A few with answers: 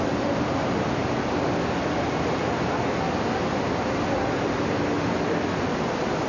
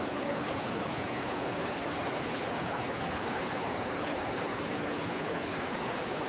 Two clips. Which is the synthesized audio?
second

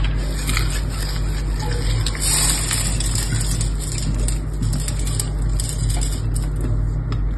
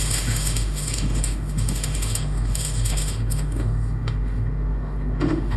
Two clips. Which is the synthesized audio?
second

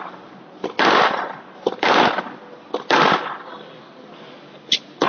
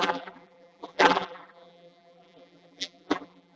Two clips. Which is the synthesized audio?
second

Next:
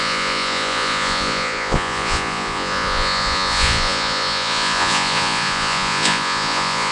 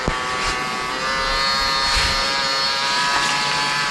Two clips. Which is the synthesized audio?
first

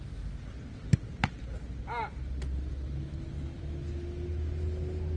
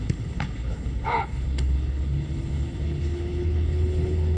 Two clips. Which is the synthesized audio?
second